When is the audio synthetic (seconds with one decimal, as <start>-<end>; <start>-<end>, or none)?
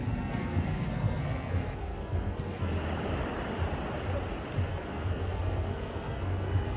0.0-2.7; 4.6-6.8